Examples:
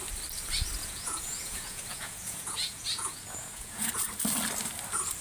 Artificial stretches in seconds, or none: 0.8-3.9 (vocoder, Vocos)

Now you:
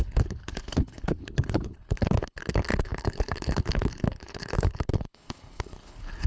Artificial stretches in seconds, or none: 0.0-6.3 (codec, HILCodec)

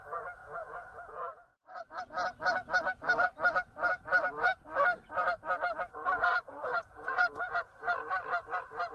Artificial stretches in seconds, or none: 0.4-1.8 (vocoder, Vocos); 6.3-7.7

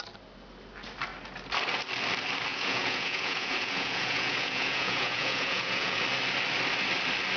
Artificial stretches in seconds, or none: 2.5-6.0 (vocoder, Vocos)

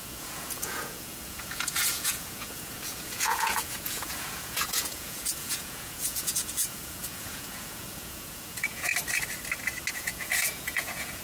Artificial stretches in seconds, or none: 0.0-8.9 (vocoder, Vocos); 9.9-11.2